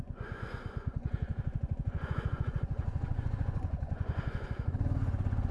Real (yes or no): no